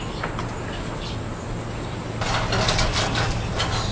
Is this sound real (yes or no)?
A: yes